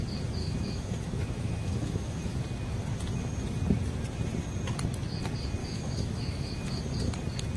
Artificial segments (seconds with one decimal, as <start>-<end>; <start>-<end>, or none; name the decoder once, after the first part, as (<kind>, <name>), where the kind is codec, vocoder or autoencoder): 0.4-2.4 (autoencoder, DAC-VAE); 5.6-6.8